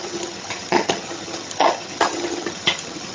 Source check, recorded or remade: remade